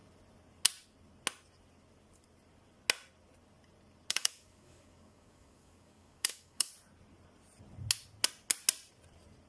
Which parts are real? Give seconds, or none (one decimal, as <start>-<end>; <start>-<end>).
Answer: 0.0-4.1; 6.7-9.5